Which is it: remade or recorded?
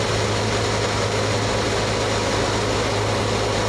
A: recorded